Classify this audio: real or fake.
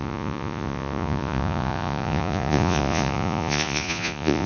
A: fake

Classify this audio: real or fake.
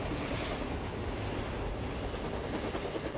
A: real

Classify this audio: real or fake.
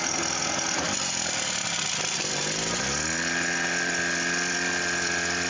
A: real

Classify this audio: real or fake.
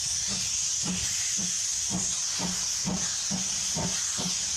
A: real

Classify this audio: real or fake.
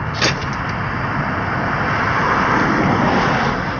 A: real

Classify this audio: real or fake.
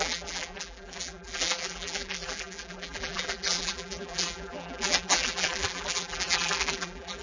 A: fake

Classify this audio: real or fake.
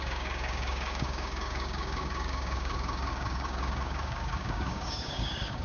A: fake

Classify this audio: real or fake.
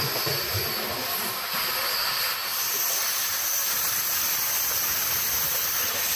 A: real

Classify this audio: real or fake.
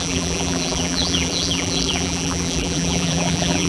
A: fake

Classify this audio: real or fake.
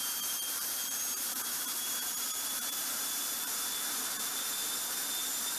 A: fake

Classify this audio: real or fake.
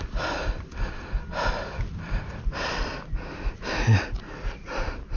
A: real